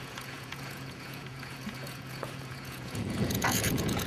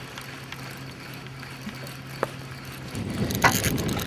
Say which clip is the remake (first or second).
first